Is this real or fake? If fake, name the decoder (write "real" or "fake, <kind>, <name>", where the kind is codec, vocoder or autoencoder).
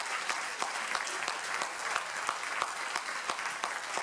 fake, vocoder, BigVGAN v2